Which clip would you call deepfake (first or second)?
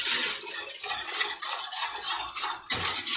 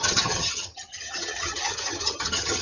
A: second